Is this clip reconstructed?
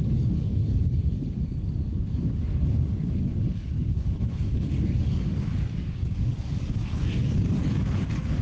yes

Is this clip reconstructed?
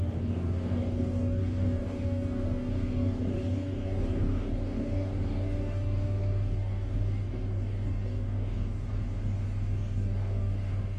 yes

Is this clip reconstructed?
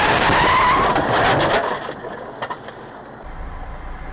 no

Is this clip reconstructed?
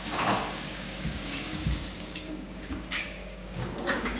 yes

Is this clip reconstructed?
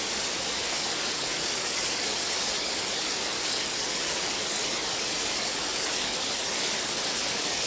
yes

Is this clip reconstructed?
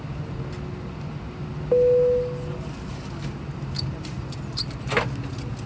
no